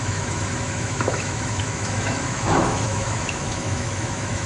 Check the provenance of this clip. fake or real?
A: fake